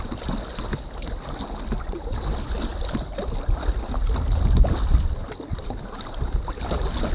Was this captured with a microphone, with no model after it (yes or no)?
yes